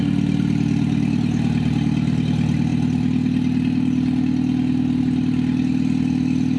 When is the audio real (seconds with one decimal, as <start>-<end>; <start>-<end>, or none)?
0.0-6.6